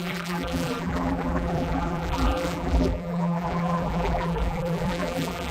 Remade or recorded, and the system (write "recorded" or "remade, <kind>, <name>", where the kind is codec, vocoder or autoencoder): remade, vocoder, BigVGAN v2